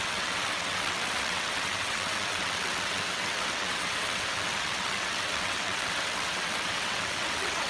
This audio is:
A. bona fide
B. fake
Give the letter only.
B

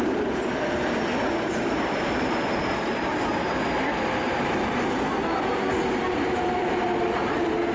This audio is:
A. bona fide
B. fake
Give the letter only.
A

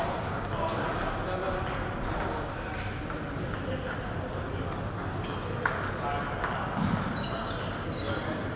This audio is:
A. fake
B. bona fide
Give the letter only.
B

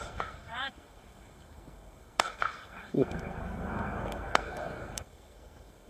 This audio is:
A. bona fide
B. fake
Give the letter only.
B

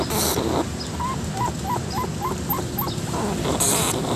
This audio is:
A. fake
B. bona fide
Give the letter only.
B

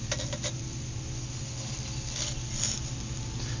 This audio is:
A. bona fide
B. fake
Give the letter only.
A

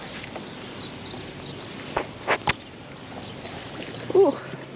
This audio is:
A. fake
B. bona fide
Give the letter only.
B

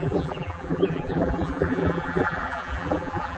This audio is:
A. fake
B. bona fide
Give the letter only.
A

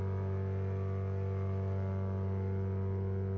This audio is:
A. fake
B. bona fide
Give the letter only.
B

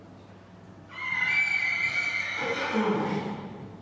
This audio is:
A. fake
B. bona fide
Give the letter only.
B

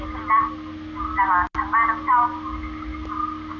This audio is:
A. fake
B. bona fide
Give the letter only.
B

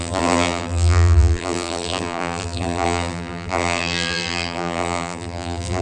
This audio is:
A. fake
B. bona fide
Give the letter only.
A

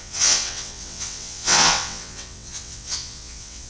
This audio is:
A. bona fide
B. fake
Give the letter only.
B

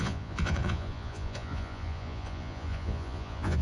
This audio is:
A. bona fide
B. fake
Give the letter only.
B